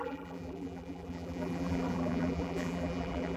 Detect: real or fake fake